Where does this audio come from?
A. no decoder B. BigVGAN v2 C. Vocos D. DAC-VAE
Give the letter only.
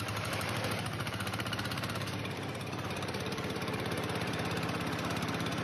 B